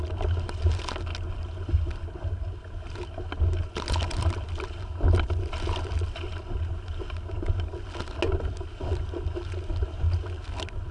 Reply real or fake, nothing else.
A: real